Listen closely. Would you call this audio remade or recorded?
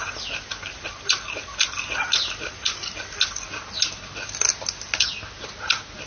recorded